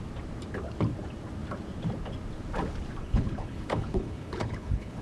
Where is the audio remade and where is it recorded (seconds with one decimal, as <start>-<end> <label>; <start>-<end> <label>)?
0.0-3.0 recorded; 3.0-5.0 remade